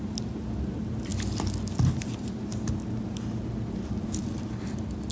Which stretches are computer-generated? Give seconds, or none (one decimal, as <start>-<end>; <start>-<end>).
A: none